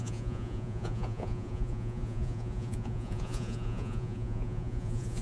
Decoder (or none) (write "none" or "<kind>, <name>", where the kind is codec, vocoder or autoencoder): vocoder, Vocos